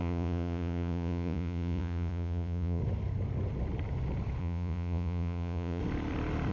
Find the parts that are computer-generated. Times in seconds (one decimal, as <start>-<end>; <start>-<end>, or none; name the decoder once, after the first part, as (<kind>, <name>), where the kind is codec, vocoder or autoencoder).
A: 0.0-2.8 (vocoder, Vocos); 4.4-5.8